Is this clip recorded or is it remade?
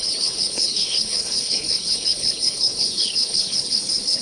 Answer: remade